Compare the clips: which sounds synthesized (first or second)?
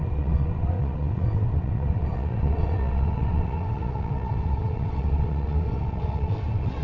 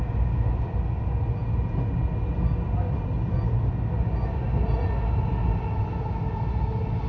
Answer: first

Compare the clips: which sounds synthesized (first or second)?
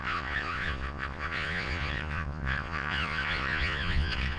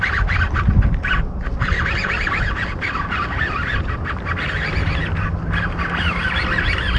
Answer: first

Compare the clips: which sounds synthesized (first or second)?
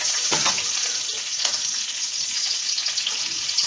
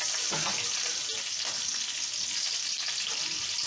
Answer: first